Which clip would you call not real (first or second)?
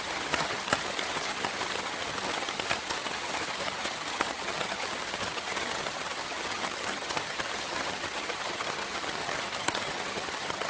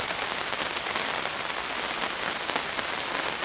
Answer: first